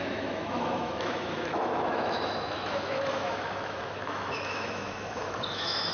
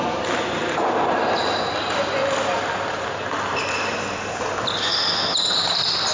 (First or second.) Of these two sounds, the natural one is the second